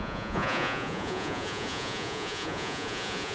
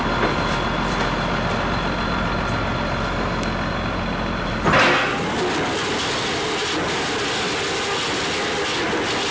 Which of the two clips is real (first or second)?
second